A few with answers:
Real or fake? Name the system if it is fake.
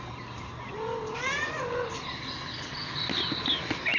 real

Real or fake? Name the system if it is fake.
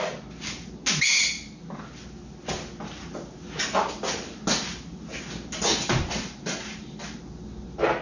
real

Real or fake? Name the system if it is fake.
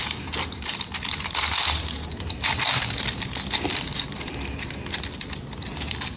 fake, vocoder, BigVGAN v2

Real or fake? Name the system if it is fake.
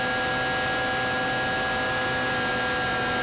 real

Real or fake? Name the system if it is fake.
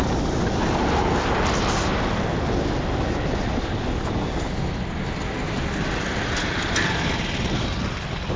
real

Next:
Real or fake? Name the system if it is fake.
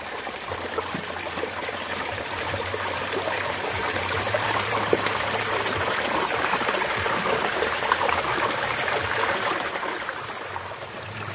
fake, vocoder, BigVGAN v2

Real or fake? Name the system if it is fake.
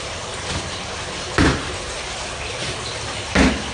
fake, vocoder, BigVGAN v2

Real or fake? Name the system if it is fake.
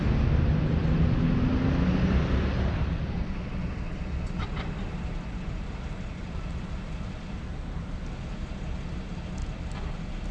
real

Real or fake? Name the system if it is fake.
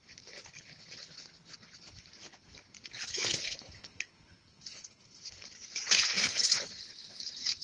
fake, codec, HILCodec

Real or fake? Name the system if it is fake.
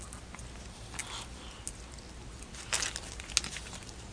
real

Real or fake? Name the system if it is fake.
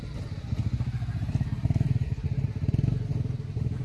real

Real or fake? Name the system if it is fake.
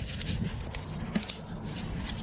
real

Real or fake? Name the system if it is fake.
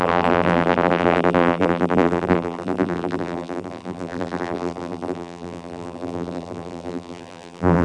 fake, vocoder, BigVGAN v2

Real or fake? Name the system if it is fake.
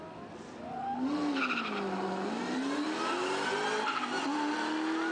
real